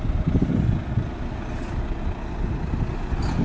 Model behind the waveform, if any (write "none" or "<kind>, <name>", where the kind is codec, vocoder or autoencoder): none